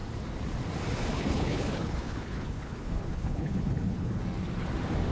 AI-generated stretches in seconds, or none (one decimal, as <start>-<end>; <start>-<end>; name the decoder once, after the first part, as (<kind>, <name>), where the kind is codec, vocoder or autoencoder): 1.1-4.2 (codec, HILCodec)